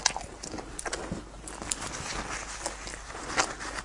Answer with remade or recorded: recorded